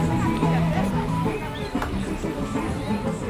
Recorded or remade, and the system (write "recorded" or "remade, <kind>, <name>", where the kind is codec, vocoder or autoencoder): recorded